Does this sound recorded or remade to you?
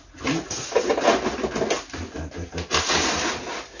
recorded